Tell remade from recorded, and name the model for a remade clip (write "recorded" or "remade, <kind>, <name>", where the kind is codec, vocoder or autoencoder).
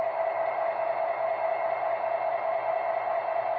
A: recorded